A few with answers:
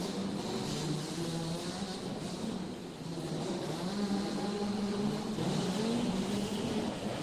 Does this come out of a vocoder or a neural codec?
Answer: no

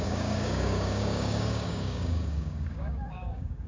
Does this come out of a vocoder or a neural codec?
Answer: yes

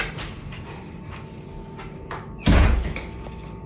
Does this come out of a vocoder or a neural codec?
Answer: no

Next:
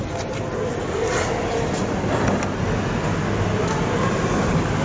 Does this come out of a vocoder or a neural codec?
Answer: no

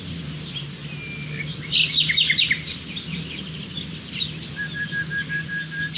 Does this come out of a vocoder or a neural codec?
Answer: no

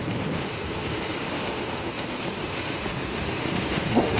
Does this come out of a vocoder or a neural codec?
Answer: yes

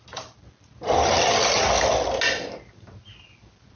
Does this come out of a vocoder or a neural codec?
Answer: no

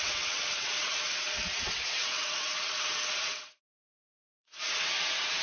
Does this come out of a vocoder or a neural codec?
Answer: yes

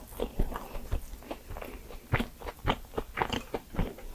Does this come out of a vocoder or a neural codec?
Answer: no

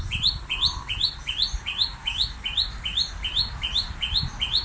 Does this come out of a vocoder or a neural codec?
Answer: no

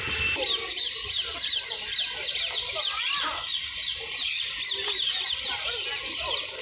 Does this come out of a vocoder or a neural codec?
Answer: no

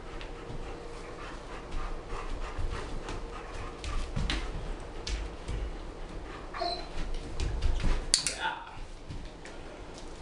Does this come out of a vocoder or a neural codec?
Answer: no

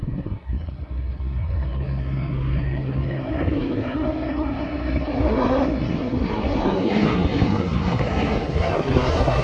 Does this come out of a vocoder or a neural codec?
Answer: yes